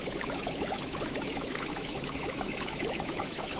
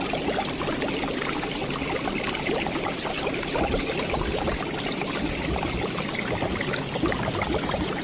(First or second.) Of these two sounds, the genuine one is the second